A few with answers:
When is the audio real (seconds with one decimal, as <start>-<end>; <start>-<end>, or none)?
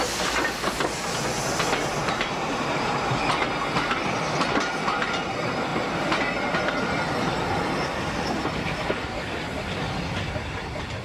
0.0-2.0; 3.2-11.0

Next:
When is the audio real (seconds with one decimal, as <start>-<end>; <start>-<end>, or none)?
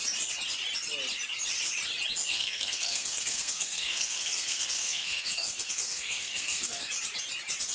0.0-2.3; 6.9-7.7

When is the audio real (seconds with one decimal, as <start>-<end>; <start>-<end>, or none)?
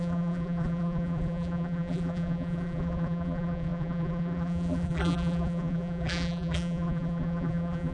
none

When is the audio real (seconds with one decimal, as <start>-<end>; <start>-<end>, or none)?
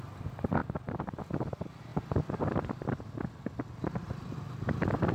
0.0-1.9